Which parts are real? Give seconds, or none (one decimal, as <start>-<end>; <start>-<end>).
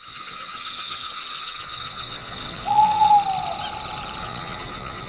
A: 3.1-4.2